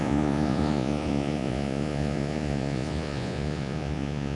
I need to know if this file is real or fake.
fake